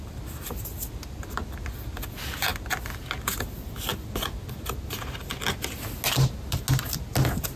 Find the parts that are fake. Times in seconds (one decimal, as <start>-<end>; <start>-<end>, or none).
none